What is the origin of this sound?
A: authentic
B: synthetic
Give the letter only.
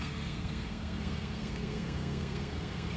B